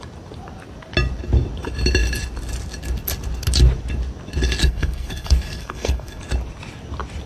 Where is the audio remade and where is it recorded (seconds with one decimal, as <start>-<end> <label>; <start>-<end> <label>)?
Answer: 0.0-4.6 recorded; 4.6-6.2 remade; 6.2-7.3 recorded